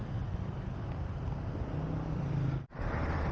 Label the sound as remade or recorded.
recorded